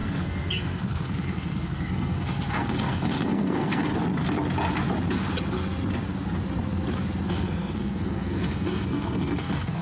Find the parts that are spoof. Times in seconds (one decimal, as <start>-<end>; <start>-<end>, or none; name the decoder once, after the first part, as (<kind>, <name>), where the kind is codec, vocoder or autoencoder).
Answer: 0.0-3.9 (codec, SNAC); 7.3-9.8